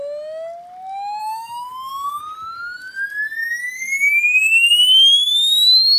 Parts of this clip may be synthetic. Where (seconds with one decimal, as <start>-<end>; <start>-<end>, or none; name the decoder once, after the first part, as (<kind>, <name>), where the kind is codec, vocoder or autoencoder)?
1.2-2.2 (codec, DAC); 3.4-6.0